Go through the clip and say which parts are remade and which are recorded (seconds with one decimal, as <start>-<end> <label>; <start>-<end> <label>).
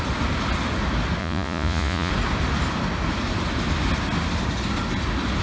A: 0.0-1.2 recorded; 1.2-2.1 remade; 2.1-5.4 recorded